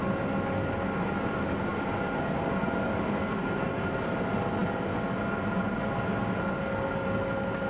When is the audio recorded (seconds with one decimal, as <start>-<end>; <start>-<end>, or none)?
0.0-7.7